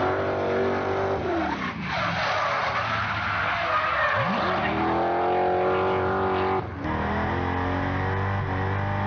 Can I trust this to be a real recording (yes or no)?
yes